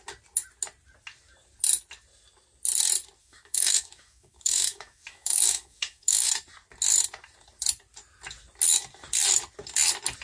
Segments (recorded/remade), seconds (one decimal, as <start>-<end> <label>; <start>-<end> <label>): 0.0-3.2 recorded; 3.2-6.3 remade; 6.3-10.2 recorded